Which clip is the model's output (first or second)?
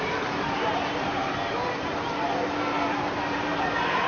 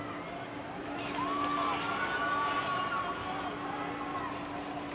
first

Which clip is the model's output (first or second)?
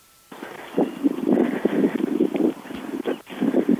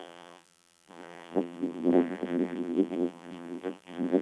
second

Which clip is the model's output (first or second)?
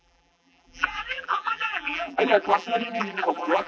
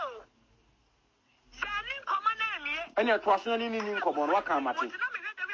first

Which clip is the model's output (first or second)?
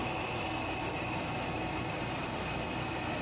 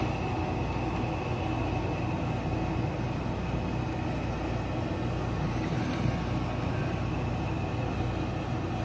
first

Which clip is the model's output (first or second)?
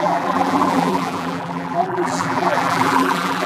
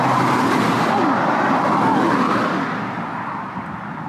first